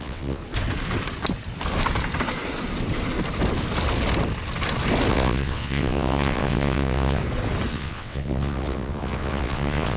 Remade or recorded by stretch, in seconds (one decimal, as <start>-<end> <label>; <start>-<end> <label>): 0.0-0.4 remade; 0.4-5.1 recorded; 5.1-7.2 remade; 7.2-7.7 recorded; 7.7-10.0 remade